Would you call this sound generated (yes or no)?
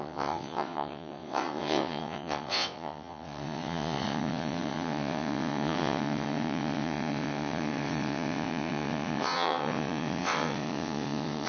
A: yes